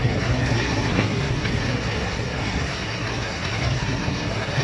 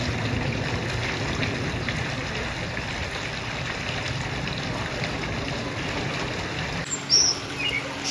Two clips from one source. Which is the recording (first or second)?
second